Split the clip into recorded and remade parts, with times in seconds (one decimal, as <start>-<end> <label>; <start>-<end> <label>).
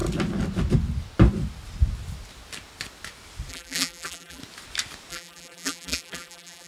0.0-3.5 recorded; 3.5-4.4 remade; 4.4-5.1 recorded; 5.1-6.7 remade